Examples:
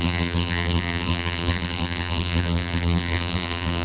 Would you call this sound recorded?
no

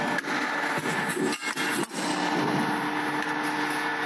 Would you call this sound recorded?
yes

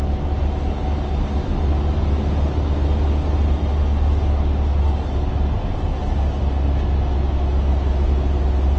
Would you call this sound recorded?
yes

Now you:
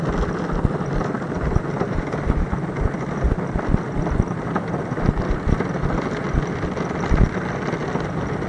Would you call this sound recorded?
yes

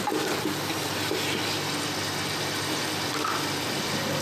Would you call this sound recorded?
yes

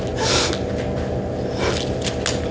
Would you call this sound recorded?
yes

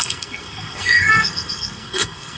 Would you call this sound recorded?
no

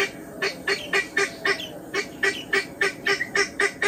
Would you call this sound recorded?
yes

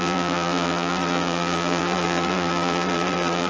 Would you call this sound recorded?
no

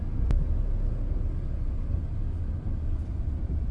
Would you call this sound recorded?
yes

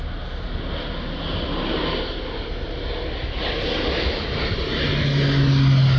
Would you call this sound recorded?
yes